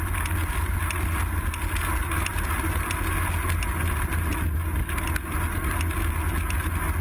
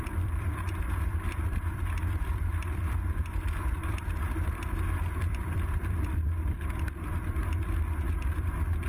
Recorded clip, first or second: first